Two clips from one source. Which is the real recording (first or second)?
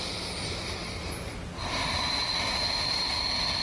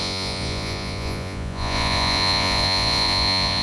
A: first